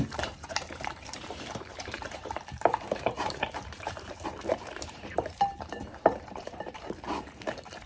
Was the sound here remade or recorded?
remade